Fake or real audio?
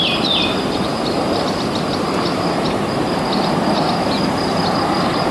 fake